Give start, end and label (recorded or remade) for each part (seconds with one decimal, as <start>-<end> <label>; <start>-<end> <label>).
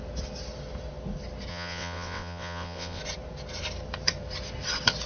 0.0-1.5 recorded; 1.5-3.0 remade; 3.0-5.1 recorded